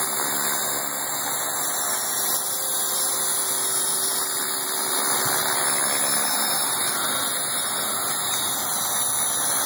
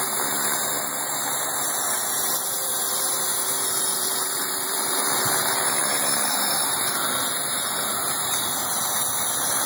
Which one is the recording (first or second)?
first